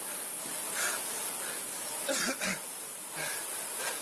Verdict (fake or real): real